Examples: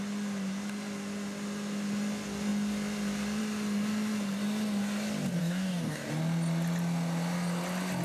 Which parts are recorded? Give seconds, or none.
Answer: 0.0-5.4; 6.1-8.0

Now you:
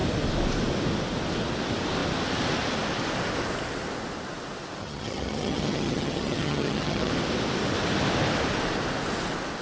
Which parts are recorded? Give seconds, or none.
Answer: 0.0-4.8; 7.1-9.6

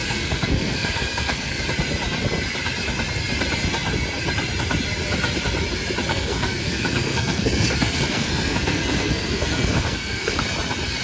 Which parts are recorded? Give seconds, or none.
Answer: 1.6-6.1; 10.4-11.0